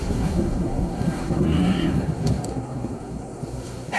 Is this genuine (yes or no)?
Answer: no